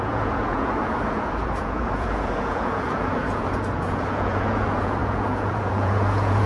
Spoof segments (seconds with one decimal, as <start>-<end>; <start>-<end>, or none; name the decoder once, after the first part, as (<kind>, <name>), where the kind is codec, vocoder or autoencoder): 0.0-6.5 (vocoder, Vocos)